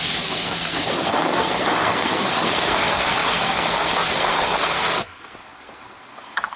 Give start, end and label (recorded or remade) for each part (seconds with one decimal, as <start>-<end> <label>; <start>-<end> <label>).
0.0-6.6 remade